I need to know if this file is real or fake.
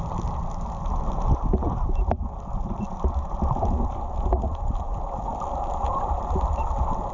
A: real